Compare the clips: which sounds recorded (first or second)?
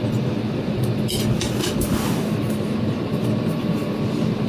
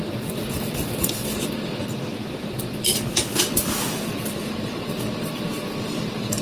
first